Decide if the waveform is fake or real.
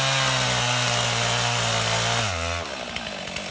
real